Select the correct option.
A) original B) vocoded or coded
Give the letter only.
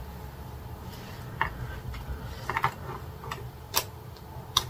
A